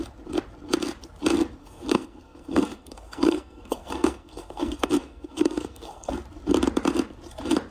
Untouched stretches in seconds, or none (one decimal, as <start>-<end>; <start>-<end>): 0.0-1.6; 6.1-7.7